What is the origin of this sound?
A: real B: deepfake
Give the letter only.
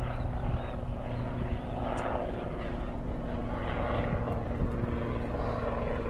A